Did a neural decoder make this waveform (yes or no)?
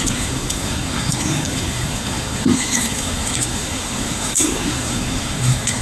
yes